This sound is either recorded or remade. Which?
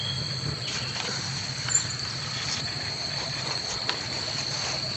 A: recorded